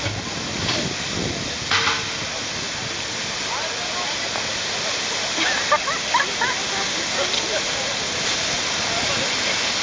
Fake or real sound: real